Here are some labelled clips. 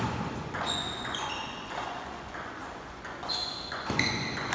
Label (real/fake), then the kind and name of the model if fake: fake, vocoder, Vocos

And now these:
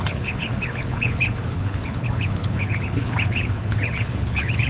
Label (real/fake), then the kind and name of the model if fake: fake, codec, HILCodec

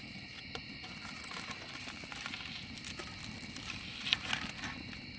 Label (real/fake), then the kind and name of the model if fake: real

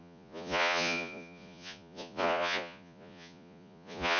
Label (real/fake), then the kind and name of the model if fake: fake, vocoder, Vocos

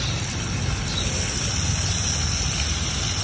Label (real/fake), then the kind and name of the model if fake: real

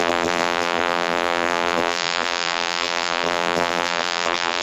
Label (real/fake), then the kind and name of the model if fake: fake, vocoder, BigVGAN v2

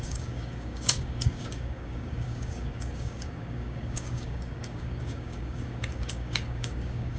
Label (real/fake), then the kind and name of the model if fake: fake, codec, DAC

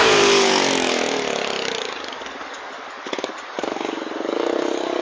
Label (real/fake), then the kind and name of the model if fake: fake, codec, DAC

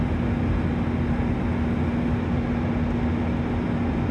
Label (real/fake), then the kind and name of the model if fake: real